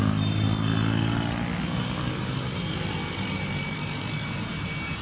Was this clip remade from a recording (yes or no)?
no